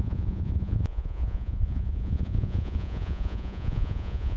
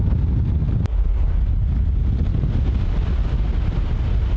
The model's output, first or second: first